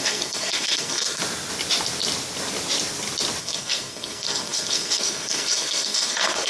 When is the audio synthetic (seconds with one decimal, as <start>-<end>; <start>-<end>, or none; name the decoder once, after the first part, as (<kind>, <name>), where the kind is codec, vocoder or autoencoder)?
0.0-1.2 (codec, SNAC); 3.4-6.5